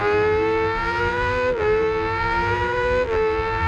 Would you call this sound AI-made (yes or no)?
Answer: yes